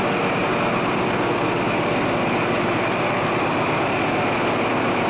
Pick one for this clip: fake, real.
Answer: real